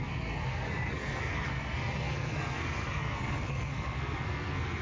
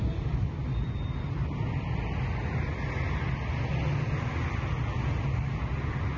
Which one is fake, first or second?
first